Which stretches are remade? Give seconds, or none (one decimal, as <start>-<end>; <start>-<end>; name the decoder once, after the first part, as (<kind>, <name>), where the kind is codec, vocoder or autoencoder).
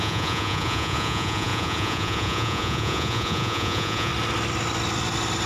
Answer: 0.0-4.1 (vocoder, Vocos)